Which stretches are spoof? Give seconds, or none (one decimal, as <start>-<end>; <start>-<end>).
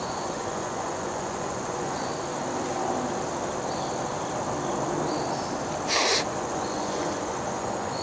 0.0-2.1; 6.3-8.0